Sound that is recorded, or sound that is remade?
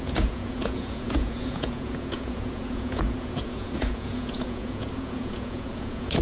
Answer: remade